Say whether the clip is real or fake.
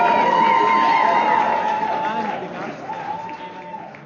real